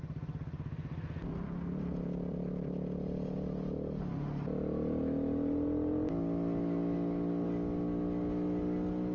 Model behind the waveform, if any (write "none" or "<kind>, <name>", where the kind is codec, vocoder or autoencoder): none